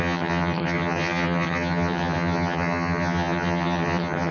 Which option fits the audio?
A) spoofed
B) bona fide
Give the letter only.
A